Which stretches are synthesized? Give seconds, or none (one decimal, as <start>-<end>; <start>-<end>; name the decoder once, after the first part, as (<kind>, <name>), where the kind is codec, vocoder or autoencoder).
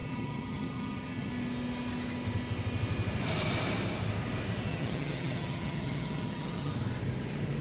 0.0-1.3 (vocoder, HiFi-GAN); 4.7-6.7